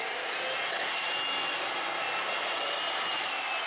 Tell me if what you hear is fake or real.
real